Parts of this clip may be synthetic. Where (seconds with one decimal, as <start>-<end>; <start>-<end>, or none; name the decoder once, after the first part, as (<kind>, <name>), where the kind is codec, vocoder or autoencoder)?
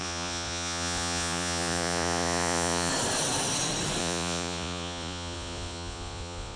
0.0-2.9 (vocoder, Vocos); 4.0-6.6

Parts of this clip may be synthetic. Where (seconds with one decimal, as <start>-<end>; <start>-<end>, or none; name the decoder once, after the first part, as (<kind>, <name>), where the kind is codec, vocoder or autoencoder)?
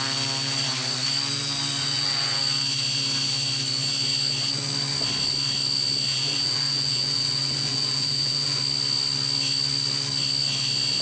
1.8-2.4 (vocoder, Vocos); 6.1-8.6